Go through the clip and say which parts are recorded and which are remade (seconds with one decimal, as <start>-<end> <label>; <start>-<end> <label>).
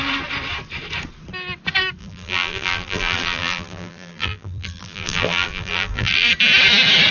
0.0-2.0 recorded; 2.0-6.3 remade; 6.3-7.1 recorded